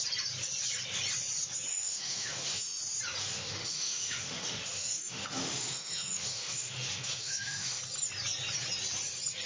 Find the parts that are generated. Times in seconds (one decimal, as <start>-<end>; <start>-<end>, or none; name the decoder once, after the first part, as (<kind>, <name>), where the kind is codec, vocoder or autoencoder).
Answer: 1.7-2.8 (autoencoder, DAC-VAE); 3.2-7.8